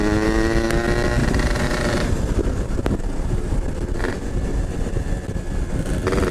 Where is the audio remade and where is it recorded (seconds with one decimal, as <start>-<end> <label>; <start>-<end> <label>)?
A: 0.0-1.2 recorded; 1.2-5.0 remade; 5.0-6.3 recorded